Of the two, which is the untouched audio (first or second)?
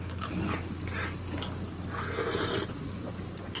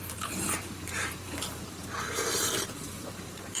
first